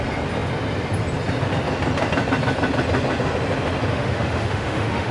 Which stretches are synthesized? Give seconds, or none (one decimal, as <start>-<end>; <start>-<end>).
3.9-5.1